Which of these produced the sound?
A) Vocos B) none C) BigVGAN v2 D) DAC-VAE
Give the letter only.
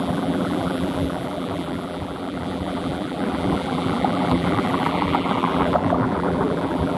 C